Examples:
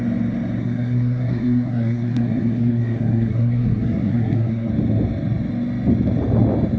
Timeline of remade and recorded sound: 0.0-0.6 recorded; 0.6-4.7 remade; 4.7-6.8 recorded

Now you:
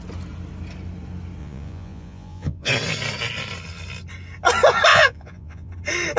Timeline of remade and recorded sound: 0.0-1.4 recorded; 1.4-2.7 remade; 2.7-4.9 recorded; 4.9-5.7 remade; 5.7-6.2 recorded

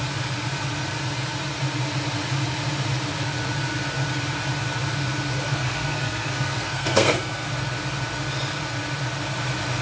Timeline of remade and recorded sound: 0.0-5.5 recorded; 5.5-7.5 remade; 7.5-9.8 recorded

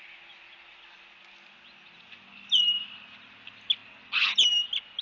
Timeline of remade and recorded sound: 0.0-5.0 recorded

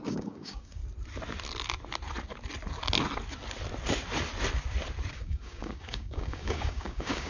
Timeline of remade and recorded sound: 0.0-0.8 remade; 0.8-5.1 recorded; 5.1-7.3 remade

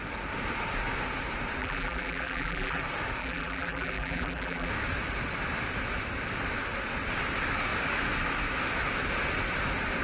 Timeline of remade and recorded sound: 0.0-1.6 recorded; 1.6-2.8 remade; 2.8-3.2 recorded; 3.2-4.7 remade; 4.7-10.0 recorded

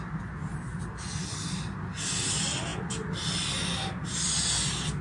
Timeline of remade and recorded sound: 0.0-5.0 recorded

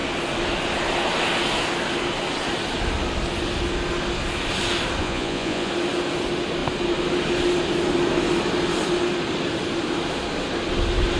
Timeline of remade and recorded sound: 0.0-5.0 recorded; 5.0-5.7 remade; 5.7-11.2 recorded